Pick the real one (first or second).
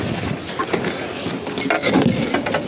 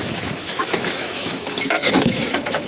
first